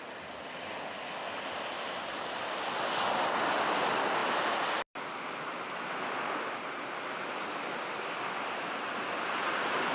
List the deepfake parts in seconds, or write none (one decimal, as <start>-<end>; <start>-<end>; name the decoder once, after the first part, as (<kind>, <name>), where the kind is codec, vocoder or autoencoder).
none